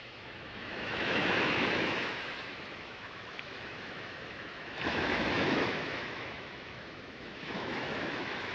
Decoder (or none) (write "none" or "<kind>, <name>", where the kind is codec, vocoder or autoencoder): autoencoder, DAC-VAE